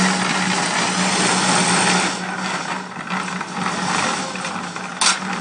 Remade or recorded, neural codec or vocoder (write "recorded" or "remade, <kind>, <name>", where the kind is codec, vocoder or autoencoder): recorded